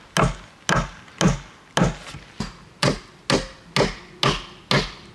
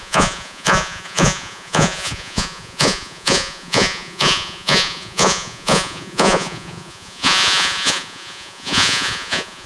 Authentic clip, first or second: first